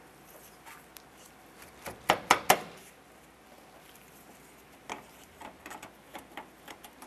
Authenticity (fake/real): real